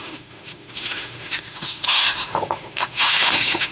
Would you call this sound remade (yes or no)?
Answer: yes